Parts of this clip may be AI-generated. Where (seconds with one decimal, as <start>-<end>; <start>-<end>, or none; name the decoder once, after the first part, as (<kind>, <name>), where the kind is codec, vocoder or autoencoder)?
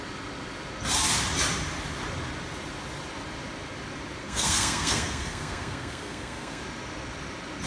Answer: 4.2-6.6 (codec, SNAC)